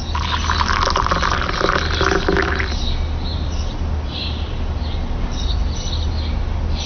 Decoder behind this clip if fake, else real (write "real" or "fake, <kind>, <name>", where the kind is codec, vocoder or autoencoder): real